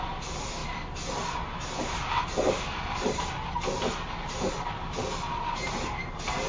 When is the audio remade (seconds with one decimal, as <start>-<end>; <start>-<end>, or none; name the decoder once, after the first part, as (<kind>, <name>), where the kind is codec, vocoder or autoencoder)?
none